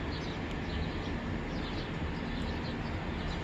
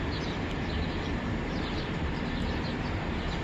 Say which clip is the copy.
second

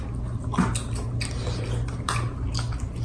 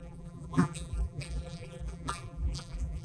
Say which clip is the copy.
second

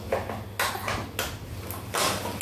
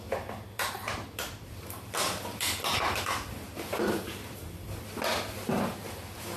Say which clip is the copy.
second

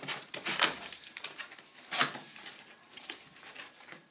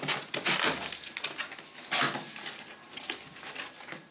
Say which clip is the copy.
first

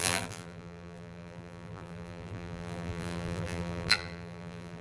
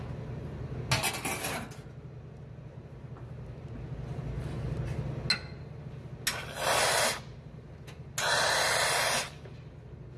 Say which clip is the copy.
first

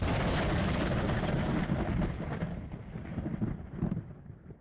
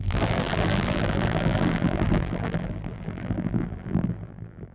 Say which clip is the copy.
second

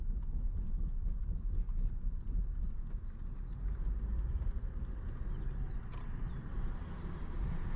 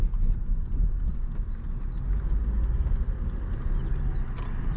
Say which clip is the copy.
first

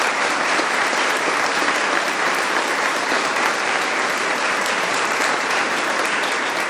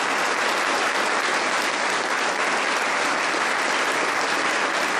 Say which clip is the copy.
first